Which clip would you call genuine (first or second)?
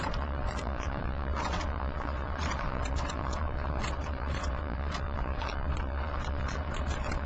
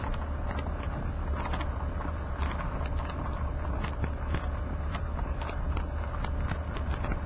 second